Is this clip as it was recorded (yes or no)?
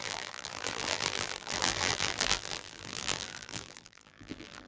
no